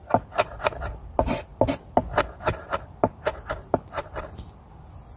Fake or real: real